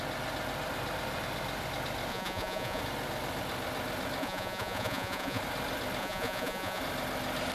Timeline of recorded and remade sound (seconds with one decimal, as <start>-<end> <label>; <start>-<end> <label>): 0.0-2.1 recorded; 2.1-2.8 remade; 2.8-4.2 recorded; 4.2-5.4 remade; 5.4-6.0 recorded; 6.0-6.8 remade; 6.8-7.5 recorded